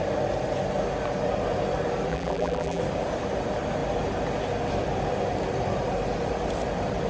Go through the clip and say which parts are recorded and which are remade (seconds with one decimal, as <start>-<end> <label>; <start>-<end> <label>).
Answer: 0.0-2.1 recorded; 2.1-2.8 remade; 2.8-7.1 recorded